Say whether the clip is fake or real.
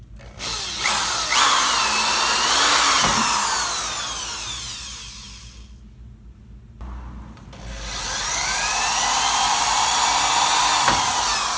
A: real